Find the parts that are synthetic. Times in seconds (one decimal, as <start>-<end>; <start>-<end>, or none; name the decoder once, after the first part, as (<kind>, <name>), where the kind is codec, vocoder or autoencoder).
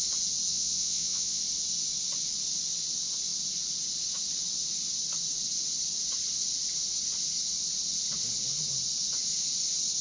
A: 0.5-1.4 (vocoder, Vocos)